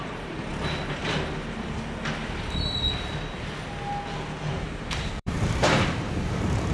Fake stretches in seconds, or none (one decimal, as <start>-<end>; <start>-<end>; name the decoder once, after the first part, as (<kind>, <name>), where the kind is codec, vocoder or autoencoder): 0.0-0.5 (vocoder, BigVGAN v2); 4.5-6.7

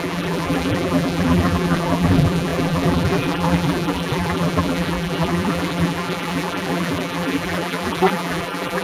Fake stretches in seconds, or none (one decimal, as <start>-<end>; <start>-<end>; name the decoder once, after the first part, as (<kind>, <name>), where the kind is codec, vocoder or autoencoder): 0.0-8.8 (vocoder, BigVGAN v2)

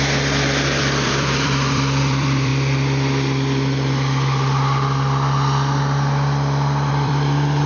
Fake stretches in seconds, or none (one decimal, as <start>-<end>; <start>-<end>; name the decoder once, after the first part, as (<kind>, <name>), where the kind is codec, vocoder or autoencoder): 0.0-2.5 (vocoder, BigVGAN v2); 6.9-7.7

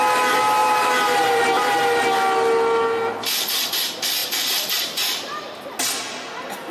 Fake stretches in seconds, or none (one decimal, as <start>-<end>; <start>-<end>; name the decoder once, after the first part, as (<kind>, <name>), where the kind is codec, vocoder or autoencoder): 0.6-1.4 (vocoder, BigVGAN v2); 4.2-5.6